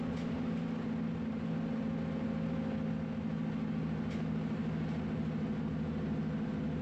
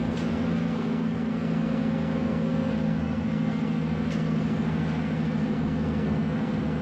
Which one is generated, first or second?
second